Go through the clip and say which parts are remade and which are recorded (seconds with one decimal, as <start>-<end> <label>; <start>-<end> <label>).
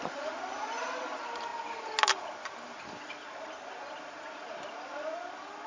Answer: 0.0-5.7 recorded